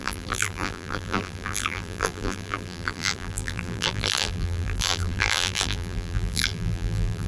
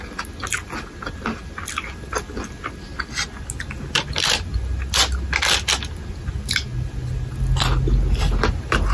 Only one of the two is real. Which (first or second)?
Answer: second